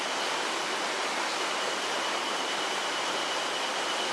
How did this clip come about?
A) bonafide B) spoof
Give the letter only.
A